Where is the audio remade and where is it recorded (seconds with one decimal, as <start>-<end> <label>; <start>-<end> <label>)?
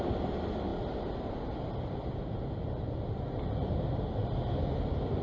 0.0-5.2 recorded